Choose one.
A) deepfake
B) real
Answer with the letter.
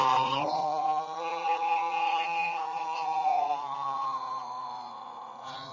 A